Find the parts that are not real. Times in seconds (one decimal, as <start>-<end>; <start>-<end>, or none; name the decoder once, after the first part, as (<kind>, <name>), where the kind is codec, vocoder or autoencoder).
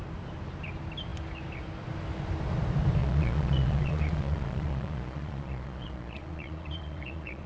3.0-7.5 (vocoder, Vocos)